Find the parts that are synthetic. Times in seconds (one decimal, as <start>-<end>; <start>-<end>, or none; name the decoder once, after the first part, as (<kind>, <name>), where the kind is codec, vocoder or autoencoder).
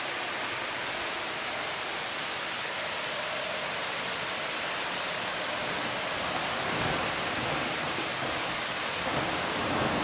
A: 6.4-7.0 (codec, DAC); 8.1-8.8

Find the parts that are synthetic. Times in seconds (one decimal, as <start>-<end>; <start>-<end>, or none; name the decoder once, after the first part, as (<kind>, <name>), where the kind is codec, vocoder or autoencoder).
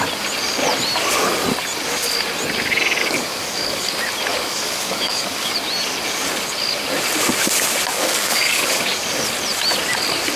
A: 3.0-3.9 (codec, DAC); 4.3-5.5; 7.9-9.0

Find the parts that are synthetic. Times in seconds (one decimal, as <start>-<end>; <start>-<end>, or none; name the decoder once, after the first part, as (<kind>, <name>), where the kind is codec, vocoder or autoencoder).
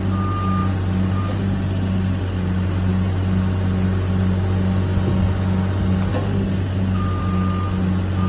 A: none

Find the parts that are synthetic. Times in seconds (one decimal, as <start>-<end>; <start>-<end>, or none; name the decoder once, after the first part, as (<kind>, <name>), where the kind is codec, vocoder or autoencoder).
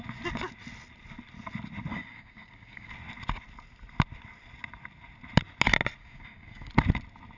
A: 1.9-2.9 (codec, DAC); 6.0-6.7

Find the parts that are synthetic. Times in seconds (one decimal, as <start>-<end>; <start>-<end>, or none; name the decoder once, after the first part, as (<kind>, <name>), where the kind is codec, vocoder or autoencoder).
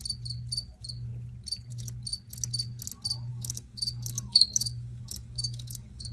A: 3.3-6.1 (codec, DAC)